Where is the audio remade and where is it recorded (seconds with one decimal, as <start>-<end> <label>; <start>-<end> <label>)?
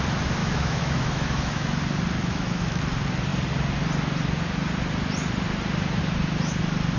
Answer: 0.0-0.4 recorded; 0.4-1.8 remade; 1.8-2.2 recorded; 2.2-2.8 remade; 2.8-7.0 recorded